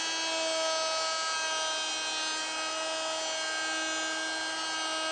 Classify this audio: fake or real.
real